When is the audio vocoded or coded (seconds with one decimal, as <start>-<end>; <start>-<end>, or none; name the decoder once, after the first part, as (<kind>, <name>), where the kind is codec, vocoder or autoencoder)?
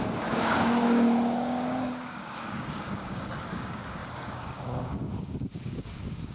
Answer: 0.0-6.3 (codec, DAC)